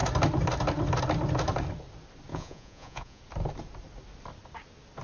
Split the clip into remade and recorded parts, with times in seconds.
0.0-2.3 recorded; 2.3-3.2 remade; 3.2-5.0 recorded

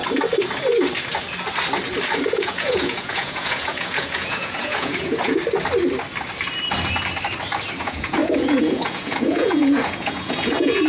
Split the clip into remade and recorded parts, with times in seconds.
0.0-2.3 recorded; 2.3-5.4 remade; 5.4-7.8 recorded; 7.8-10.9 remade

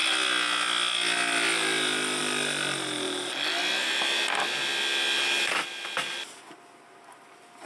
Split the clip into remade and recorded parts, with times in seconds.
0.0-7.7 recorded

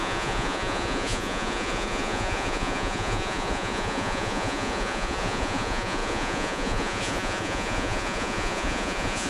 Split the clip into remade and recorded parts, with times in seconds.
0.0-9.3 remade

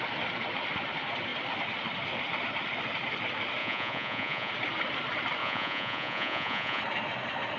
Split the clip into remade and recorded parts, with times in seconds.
0.0-3.6 recorded; 3.6-4.5 remade; 4.5-5.4 recorded; 5.4-6.8 remade; 6.8-7.6 recorded